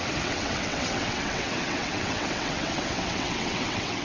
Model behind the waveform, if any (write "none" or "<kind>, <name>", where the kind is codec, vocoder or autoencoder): vocoder, WaveNeXt